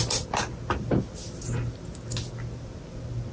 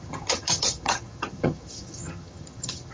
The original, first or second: first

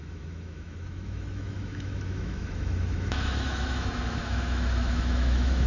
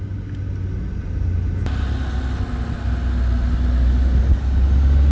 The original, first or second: second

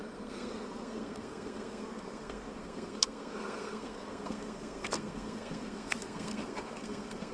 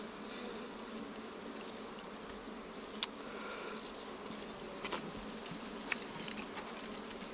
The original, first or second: second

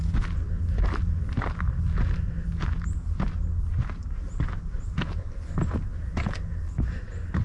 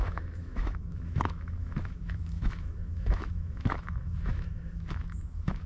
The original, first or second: first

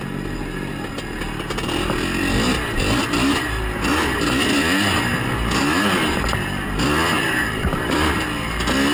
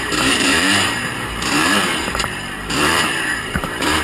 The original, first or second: first